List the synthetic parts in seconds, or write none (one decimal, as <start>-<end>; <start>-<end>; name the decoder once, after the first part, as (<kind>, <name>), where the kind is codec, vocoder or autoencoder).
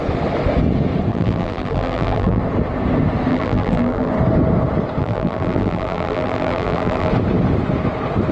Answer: 1.1-2.4 (vocoder, BigVGAN v2); 3.3-4.1; 5.0-7.1